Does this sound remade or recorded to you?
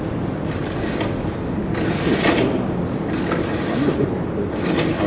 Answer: recorded